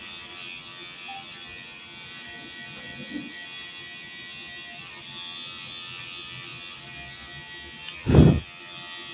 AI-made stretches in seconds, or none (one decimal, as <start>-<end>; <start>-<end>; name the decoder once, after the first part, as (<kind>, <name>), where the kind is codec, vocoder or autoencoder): none